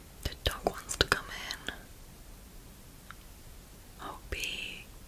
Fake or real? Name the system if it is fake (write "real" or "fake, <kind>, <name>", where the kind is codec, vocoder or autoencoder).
real